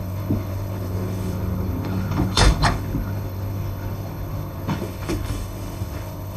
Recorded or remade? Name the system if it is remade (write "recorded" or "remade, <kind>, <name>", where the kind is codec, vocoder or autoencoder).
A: remade, codec, HILCodec